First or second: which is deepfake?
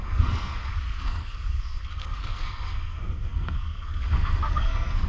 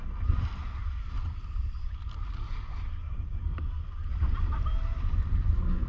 first